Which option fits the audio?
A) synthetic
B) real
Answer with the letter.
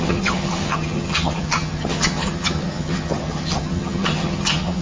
A